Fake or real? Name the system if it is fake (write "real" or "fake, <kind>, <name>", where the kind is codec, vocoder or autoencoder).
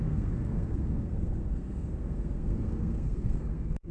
fake, codec, SNAC